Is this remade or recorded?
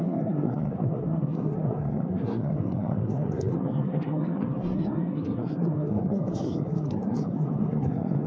remade